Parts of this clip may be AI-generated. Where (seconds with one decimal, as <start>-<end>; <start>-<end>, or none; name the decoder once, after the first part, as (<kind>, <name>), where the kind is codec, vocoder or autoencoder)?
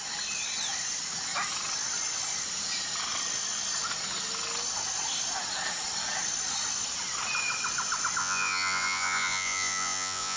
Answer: 8.2-10.4 (vocoder, Vocos)